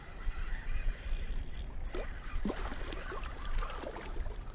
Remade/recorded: recorded